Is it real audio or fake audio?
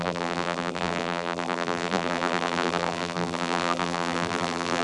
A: fake